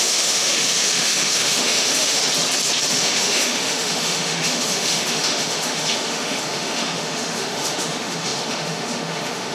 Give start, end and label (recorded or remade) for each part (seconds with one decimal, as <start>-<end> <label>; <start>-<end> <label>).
0.0-2.2 remade; 2.2-2.9 recorded; 2.9-9.5 remade